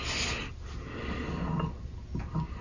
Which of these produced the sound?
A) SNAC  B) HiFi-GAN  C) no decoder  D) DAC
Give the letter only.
C